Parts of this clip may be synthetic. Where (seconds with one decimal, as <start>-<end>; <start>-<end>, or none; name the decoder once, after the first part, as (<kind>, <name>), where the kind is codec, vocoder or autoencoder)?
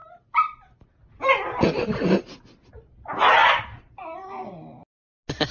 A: none